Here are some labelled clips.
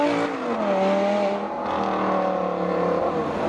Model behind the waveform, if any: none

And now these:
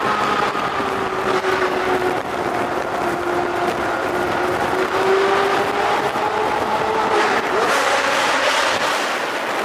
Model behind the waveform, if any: none